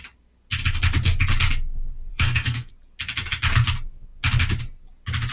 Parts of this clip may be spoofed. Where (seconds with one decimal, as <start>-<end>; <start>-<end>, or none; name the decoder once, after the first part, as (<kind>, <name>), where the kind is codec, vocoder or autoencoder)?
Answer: 2.1-2.7 (codec, SNAC)